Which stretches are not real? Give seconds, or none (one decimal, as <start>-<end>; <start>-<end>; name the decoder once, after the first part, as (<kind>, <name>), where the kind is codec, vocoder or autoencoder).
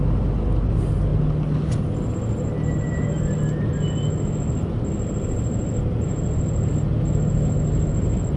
none